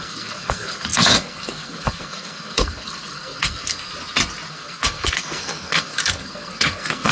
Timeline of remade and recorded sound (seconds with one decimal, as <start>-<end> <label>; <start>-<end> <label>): 0.0-3.9 remade; 3.9-4.5 recorded; 4.5-7.1 remade